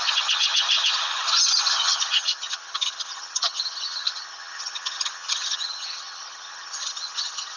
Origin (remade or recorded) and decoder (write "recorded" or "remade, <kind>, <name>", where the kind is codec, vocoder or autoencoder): remade, vocoder, HiFi-GAN